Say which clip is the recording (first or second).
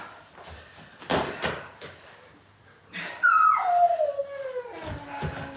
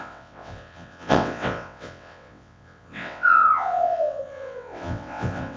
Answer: first